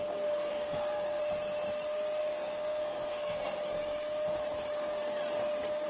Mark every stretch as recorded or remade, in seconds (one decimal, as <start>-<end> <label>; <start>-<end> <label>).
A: 0.0-0.5 recorded; 0.5-1.2 remade; 1.2-2.2 recorded; 2.2-3.4 remade; 3.4-5.9 recorded